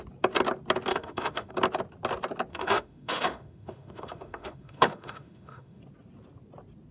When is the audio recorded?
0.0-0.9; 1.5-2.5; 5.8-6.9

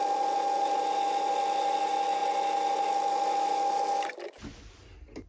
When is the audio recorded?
0.0-5.3